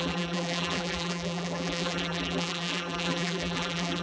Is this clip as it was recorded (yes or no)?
no